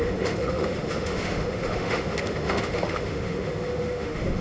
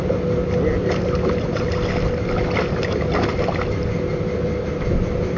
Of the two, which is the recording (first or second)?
second